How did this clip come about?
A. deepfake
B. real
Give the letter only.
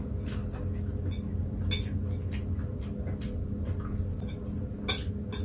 B